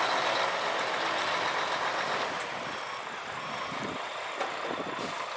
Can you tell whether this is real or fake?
real